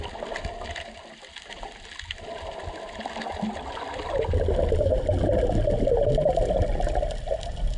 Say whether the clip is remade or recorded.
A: recorded